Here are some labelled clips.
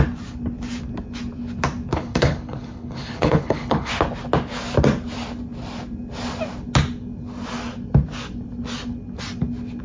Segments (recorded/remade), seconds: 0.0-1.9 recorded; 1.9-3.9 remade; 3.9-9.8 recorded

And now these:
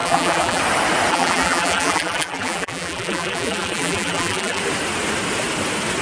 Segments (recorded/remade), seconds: 0.0-0.6 remade; 0.6-1.1 recorded; 1.1-4.6 remade; 4.6-6.0 recorded

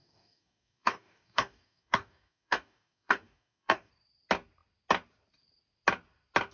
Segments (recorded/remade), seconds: 0.0-3.9 remade; 3.9-6.5 recorded

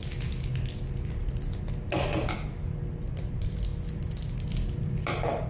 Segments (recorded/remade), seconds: 0.0-5.5 recorded